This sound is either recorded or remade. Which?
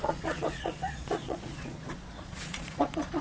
remade